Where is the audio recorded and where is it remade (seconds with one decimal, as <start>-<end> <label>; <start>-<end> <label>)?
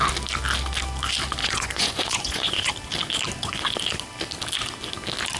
0.0-1.4 recorded; 1.4-2.7 remade; 2.7-5.4 recorded